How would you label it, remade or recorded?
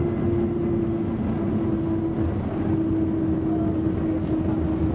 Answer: recorded